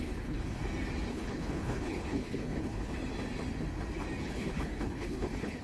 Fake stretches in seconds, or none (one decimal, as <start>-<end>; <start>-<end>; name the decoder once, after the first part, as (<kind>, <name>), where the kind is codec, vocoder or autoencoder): 0.0-0.6 (codec, HILCodec); 1.1-3.0; 4.2-5.6